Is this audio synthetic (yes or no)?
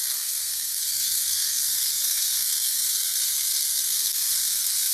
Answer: yes